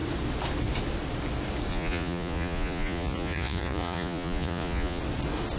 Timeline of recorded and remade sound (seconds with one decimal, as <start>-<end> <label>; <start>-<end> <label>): 0.0-1.7 recorded; 1.7-5.0 remade; 5.0-5.6 recorded